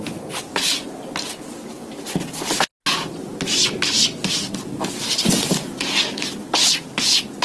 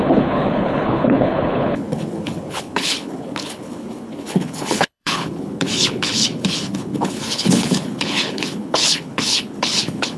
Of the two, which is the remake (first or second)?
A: second